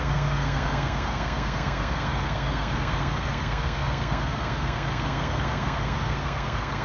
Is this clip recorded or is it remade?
remade